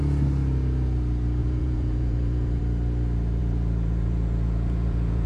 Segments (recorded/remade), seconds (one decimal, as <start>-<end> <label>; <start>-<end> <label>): 0.0-1.4 recorded; 1.4-2.6 remade; 2.6-3.4 recorded; 3.4-5.3 remade

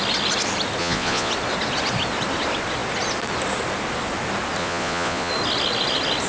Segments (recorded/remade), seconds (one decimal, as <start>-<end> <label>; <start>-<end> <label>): 0.0-0.8 recorded; 0.8-1.3 remade; 1.3-4.6 recorded; 4.6-5.3 remade; 5.3-6.3 recorded

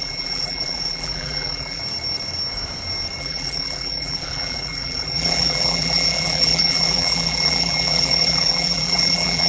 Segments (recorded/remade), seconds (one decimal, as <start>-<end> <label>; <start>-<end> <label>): 0.0-1.8 remade; 1.8-3.2 recorded; 3.2-9.5 remade

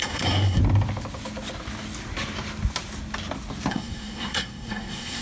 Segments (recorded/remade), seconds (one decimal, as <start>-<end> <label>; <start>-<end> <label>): 0.0-0.6 remade; 0.6-3.7 recorded; 3.7-5.2 remade

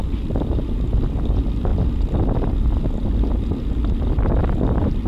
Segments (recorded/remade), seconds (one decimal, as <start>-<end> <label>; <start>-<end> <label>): 0.0-5.1 recorded

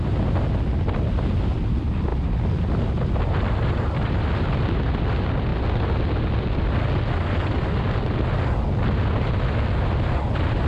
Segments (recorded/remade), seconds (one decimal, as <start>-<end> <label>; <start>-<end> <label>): 0.0-10.7 recorded

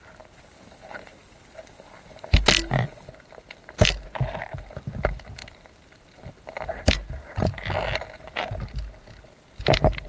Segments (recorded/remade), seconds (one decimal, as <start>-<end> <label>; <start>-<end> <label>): 0.0-10.1 recorded